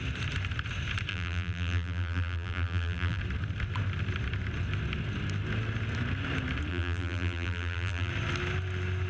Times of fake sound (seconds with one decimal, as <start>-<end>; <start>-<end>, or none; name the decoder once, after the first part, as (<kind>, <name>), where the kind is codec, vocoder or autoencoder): 1.1-3.2 (vocoder, BigVGAN v2); 6.7-8.1